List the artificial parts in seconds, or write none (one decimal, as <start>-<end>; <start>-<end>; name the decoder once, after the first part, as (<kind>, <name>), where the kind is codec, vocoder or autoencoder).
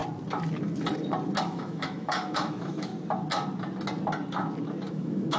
1.4-2.9 (autoencoder, DAC-VAE); 4.9-5.4